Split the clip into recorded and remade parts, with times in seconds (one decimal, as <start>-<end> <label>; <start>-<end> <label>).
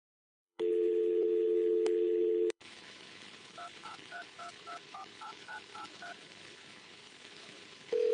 0.0-8.1 remade